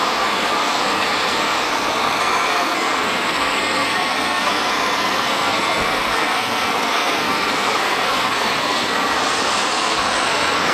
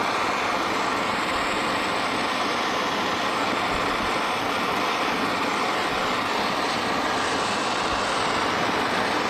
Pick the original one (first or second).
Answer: second